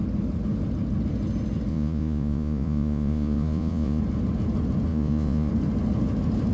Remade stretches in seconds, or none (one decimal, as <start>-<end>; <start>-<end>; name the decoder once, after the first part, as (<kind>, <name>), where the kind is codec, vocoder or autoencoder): 1.7-4.0 (vocoder, Vocos); 4.9-5.5